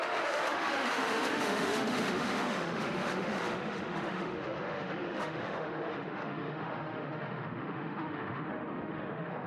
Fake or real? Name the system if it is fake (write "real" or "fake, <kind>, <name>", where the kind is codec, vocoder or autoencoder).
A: fake, autoencoder, DAC-VAE